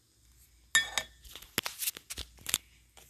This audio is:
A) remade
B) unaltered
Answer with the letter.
B